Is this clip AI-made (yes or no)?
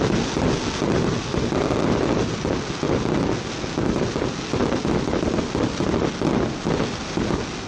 no